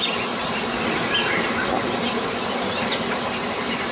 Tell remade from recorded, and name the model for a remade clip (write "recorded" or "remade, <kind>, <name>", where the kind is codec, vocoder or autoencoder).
recorded